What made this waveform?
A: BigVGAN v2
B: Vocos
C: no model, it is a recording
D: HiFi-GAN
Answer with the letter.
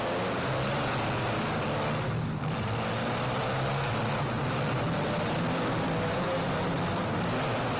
C